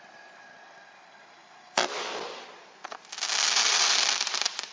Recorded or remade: recorded